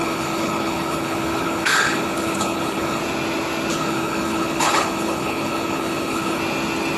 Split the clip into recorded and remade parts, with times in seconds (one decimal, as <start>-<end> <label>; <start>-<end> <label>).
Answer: 0.0-3.0 remade; 3.0-3.7 recorded; 3.7-6.4 remade; 6.4-7.0 recorded